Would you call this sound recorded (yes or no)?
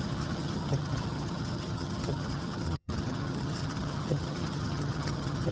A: no